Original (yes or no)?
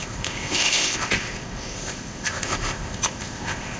no